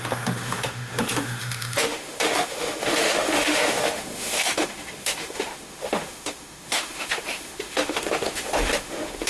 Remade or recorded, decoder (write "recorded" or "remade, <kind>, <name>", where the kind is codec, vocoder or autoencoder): remade, autoencoder, DAC-VAE